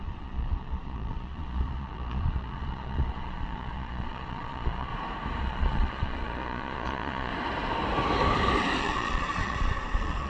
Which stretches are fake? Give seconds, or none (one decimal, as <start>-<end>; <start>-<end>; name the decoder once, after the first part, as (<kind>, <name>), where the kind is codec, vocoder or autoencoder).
0.0-4.9 (vocoder, Vocos); 5.4-7.3; 8.8-10.3